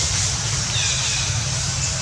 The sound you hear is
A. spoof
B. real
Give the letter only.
B